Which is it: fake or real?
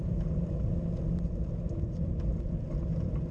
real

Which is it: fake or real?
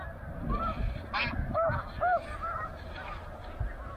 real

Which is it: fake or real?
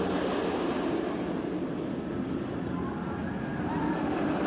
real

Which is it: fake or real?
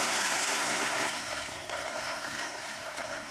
fake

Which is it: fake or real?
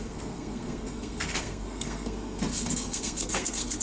fake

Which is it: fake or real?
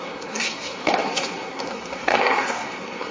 fake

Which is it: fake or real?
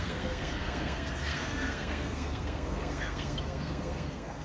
fake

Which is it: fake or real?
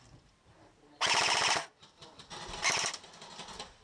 real